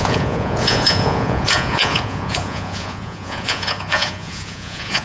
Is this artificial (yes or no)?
yes